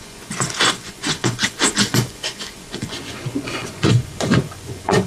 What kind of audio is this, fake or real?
fake